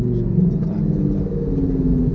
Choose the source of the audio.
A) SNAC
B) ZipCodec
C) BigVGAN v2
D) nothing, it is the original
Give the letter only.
D